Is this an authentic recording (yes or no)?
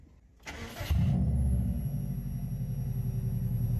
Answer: yes